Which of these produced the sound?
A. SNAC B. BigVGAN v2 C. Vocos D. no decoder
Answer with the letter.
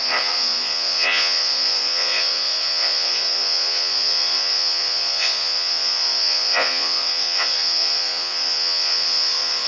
C